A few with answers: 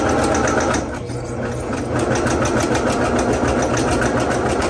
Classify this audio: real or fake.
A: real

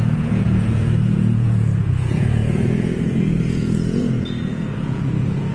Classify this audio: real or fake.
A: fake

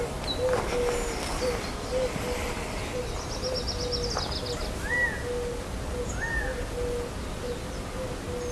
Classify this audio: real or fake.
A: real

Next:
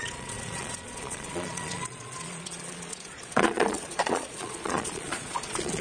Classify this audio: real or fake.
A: fake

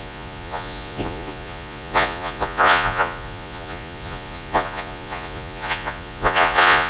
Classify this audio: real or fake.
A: fake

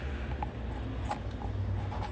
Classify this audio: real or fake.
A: real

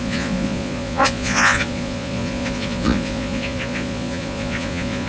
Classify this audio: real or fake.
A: fake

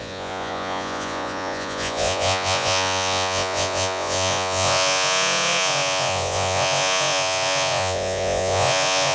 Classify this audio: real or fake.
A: fake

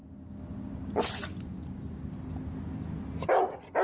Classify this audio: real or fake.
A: real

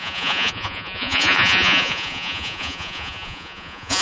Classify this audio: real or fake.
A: fake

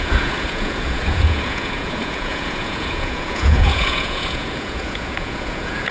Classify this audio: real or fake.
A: fake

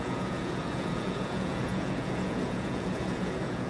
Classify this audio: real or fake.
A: fake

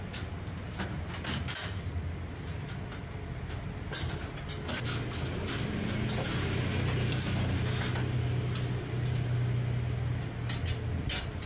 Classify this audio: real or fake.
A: real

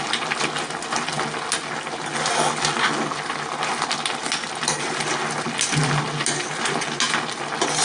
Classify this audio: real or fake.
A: real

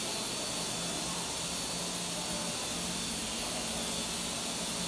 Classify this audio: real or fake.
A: real